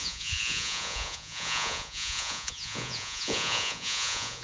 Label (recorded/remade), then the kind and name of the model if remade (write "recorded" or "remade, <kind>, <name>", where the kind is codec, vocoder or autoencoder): remade, vocoder, Vocos